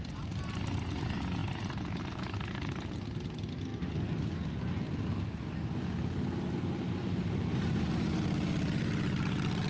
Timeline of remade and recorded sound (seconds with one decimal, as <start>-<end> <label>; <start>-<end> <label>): 0.0-9.7 recorded